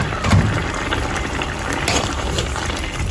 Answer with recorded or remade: recorded